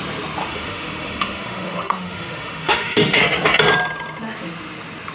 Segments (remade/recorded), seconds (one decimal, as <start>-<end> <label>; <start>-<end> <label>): 0.0-0.4 recorded; 0.4-3.2 remade; 3.2-5.1 recorded